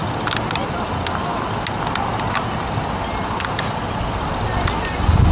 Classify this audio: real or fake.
real